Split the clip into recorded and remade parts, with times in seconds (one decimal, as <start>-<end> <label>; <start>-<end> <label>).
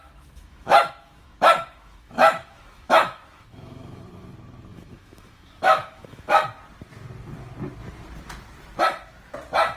0.0-4.0 remade; 4.0-4.7 recorded; 4.7-6.4 remade; 6.4-9.8 recorded